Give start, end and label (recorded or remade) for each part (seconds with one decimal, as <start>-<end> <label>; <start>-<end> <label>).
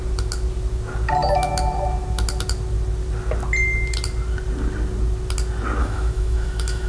0.0-5.8 recorded; 5.8-6.9 remade